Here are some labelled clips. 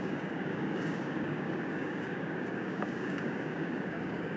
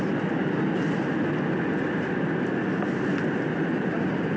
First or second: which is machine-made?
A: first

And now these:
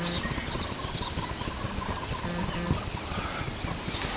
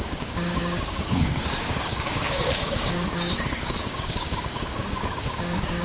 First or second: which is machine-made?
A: second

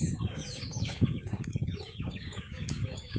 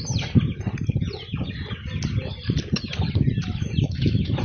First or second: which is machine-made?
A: first